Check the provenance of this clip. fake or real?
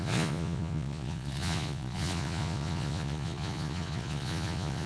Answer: fake